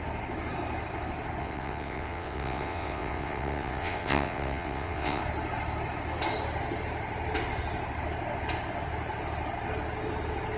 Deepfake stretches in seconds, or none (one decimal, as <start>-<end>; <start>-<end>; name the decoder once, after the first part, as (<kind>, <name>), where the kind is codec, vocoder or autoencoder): 1.4-5.2 (vocoder, WaveNeXt)